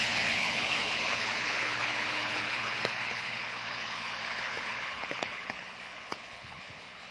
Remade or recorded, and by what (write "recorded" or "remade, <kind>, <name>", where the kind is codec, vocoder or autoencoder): remade, codec, HILCodec